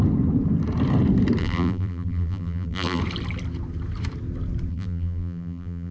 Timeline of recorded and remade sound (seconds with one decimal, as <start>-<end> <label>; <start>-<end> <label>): 0.0-1.4 recorded; 1.4-3.0 remade; 3.0-4.7 recorded; 4.7-5.9 remade